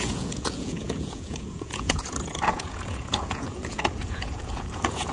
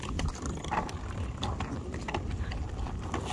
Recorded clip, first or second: second